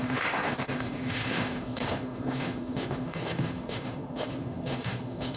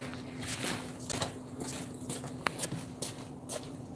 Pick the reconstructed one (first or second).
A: first